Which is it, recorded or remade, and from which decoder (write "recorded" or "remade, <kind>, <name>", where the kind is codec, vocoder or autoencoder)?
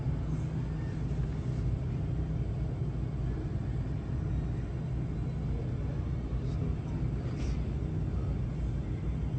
recorded